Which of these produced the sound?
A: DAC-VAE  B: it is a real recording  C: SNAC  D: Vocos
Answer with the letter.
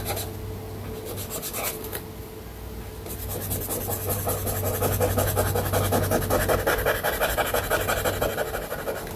B